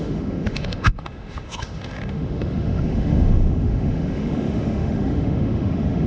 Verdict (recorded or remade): remade